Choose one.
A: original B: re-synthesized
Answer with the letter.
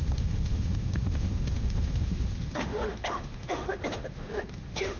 B